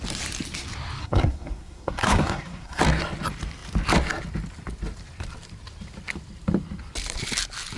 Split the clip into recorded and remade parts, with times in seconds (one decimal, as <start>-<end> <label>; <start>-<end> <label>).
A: 0.0-1.0 recorded; 1.0-2.8 remade; 2.8-7.8 recorded

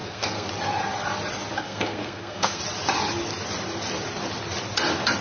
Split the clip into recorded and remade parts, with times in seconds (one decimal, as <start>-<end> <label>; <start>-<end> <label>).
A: 0.0-0.5 remade; 0.5-1.6 recorded; 1.6-2.6 remade; 2.6-5.2 recorded

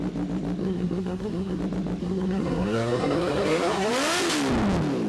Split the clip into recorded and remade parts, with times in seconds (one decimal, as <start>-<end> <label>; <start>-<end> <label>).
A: 0.0-0.6 recorded; 0.6-1.6 remade; 1.6-2.0 recorded; 2.0-3.9 remade; 3.9-5.1 recorded

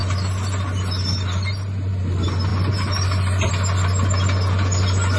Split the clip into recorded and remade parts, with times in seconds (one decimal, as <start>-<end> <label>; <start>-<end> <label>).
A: 0.0-5.2 recorded